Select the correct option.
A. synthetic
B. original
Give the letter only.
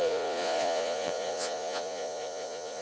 A